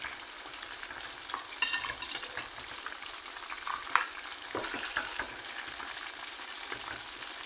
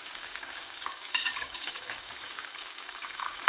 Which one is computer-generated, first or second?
second